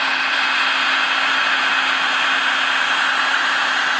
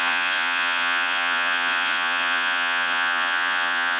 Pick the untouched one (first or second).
first